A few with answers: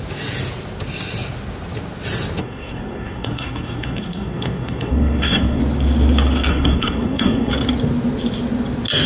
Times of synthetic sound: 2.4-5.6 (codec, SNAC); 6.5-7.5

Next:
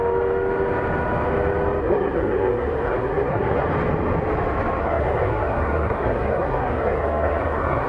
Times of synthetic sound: 1.8-3.7 (codec, SNAC); 4.8-7.9